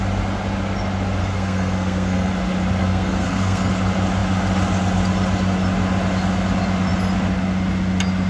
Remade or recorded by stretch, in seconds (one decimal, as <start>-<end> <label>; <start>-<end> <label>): 0.0-1.2 recorded; 1.2-2.3 remade; 2.3-2.8 recorded; 2.8-3.7 remade; 3.7-8.3 recorded